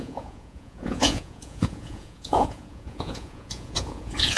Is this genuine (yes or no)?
no